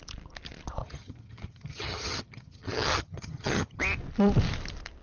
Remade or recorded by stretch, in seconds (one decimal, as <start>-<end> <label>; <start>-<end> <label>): 0.0-0.8 recorded; 0.8-3.8 remade; 3.8-5.0 recorded